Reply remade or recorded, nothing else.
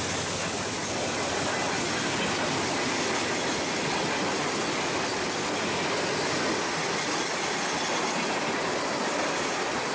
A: recorded